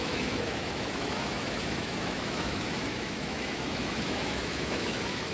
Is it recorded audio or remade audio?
remade